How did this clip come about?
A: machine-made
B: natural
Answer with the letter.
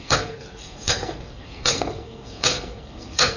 A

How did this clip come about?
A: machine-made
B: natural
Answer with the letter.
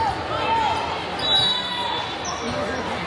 B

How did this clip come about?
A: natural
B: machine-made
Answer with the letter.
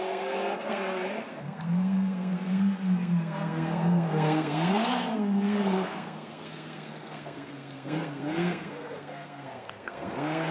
B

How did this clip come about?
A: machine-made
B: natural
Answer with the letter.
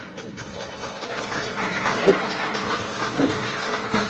A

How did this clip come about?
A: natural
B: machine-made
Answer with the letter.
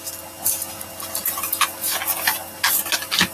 A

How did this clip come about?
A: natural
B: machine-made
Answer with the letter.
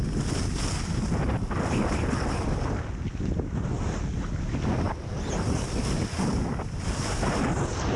A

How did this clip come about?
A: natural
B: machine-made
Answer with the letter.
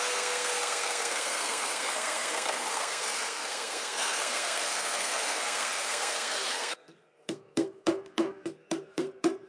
B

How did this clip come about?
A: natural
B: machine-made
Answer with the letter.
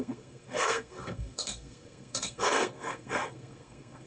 B